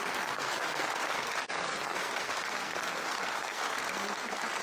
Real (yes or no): no